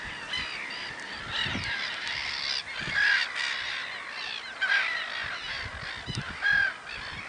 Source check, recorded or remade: recorded